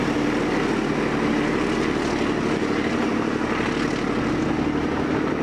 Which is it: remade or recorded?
recorded